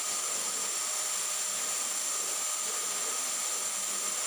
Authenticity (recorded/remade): recorded